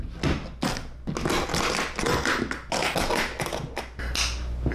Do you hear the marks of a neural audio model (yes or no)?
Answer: no